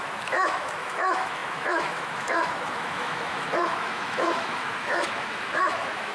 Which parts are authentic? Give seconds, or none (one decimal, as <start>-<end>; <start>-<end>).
none